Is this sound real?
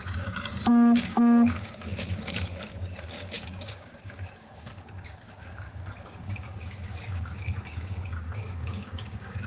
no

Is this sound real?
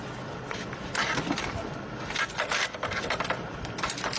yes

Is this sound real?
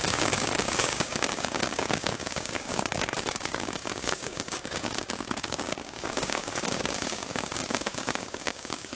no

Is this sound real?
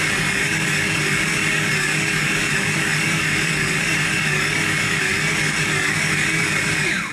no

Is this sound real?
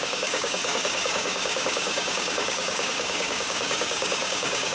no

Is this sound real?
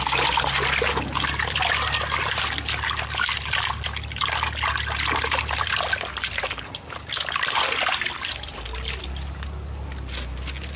yes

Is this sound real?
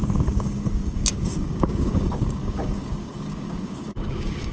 no